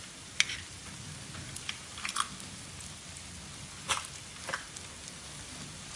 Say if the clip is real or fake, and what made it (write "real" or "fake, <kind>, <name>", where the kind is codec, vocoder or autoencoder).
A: real